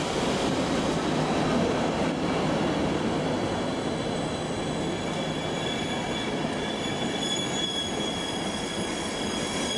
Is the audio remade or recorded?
recorded